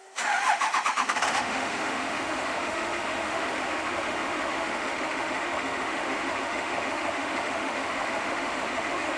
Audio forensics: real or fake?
fake